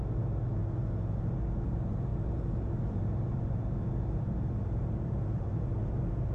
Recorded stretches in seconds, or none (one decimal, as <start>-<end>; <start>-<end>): 0.0-2.1; 5.5-6.3